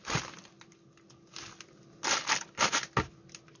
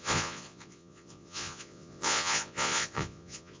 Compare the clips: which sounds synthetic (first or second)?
second